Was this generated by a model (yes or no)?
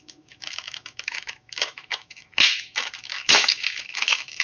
yes